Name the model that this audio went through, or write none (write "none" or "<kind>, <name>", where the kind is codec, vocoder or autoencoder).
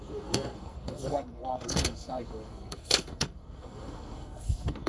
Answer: codec, SNAC